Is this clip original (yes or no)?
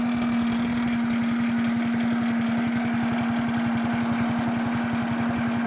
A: yes